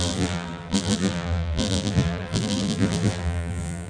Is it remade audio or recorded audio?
remade